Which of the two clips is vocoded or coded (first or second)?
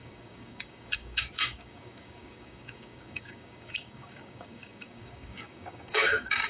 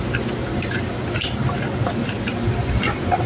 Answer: first